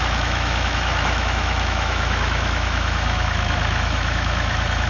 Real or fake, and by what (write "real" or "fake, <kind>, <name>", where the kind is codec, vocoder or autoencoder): fake, autoencoder, DAC-VAE